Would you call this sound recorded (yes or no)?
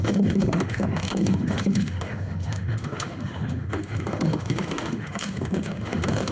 no